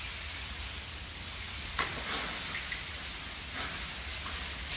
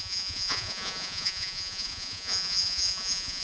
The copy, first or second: second